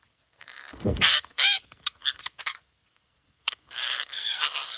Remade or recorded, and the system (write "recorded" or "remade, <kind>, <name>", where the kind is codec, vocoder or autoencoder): remade, codec, SNAC